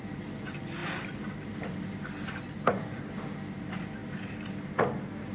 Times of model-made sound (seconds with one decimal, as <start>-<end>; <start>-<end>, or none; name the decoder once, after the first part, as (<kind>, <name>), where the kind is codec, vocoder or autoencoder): none